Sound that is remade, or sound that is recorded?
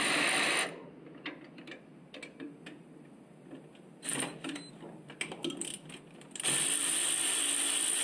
recorded